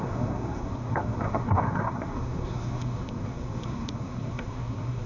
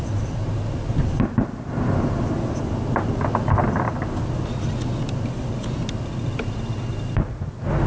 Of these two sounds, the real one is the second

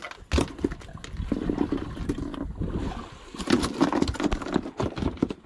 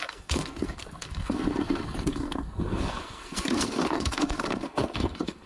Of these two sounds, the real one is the first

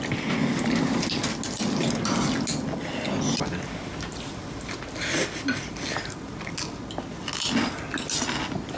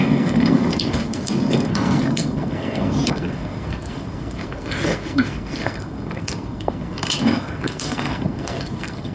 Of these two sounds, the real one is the first